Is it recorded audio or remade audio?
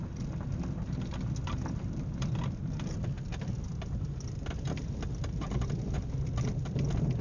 recorded